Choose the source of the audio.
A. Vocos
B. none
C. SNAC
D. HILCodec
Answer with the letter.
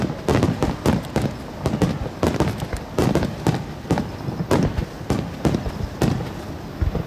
B